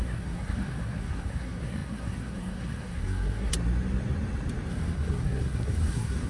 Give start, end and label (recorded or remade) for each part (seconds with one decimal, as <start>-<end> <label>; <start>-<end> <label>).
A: 0.0-3.5 remade; 3.5-4.7 recorded; 4.7-6.3 remade